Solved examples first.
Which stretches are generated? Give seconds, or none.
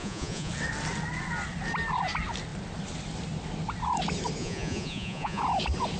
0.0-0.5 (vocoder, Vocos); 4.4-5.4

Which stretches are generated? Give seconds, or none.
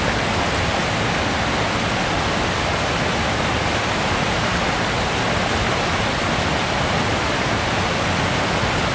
none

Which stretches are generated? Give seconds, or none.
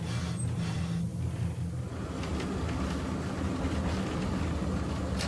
none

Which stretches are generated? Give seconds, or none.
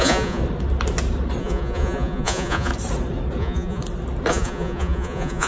0.0-0.4 (vocoder, Vocos); 1.4-2.7; 3.4-3.8; 4.3-5.5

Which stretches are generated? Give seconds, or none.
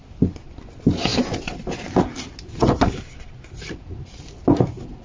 none